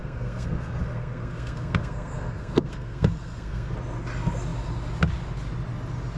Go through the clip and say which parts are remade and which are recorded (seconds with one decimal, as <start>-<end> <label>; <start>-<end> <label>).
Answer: 0.0-3.7 remade; 3.7-6.2 recorded